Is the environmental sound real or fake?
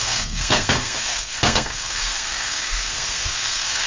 fake